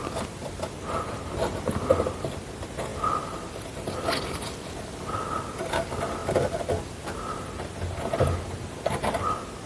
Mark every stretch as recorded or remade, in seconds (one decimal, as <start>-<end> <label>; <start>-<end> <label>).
0.0-9.7 recorded